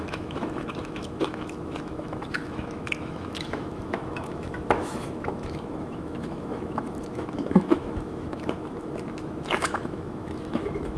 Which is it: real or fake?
fake